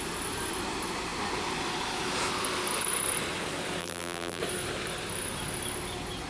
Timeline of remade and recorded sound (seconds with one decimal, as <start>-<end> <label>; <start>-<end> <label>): 0.0-3.8 recorded; 3.8-4.4 remade; 4.4-6.3 recorded